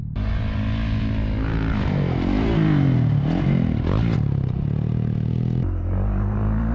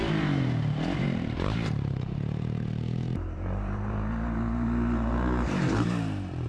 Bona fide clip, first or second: first